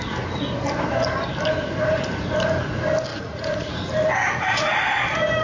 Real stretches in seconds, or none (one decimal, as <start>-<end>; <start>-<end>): 0.0-3.1; 3.7-4.2; 4.7-5.4